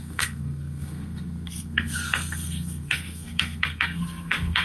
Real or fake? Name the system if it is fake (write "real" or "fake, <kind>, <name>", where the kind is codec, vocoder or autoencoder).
fake, codec, SNAC